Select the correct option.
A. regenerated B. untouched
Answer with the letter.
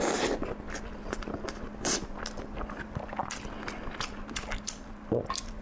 B